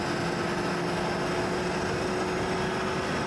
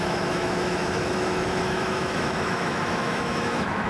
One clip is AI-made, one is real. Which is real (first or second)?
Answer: first